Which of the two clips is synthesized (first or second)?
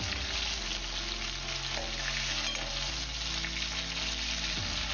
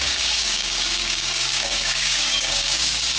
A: second